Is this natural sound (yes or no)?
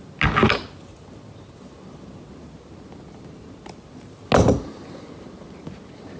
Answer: yes